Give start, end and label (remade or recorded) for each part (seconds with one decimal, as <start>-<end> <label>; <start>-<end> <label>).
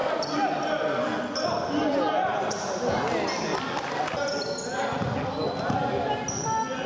0.0-6.9 recorded